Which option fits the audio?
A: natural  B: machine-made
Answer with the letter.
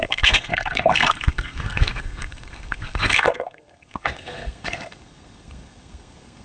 B